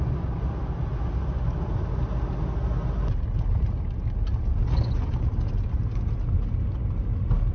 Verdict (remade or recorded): recorded